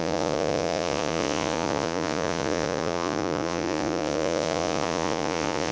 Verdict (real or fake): fake